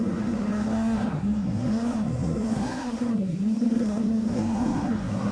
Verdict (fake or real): fake